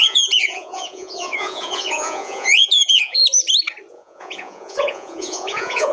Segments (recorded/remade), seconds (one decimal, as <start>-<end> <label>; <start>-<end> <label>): 0.0-3.2 remade; 3.2-3.9 recorded; 3.9-5.9 remade